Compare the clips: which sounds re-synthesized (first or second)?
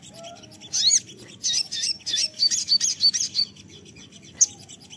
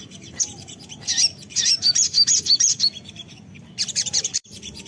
second